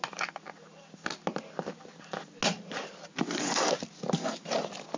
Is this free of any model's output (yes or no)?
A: yes